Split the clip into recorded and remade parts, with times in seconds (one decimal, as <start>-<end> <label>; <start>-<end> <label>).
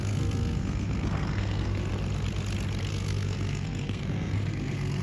0.0-1.9 remade; 1.9-2.9 recorded; 2.9-5.0 remade